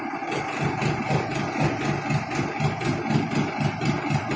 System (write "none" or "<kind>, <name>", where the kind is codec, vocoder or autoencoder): none